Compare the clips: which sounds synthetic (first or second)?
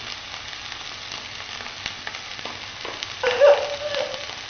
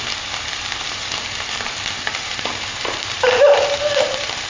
second